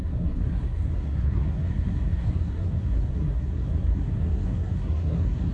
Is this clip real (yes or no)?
no